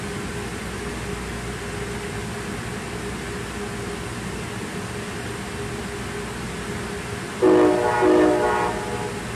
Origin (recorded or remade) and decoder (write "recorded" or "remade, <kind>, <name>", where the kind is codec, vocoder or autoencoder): recorded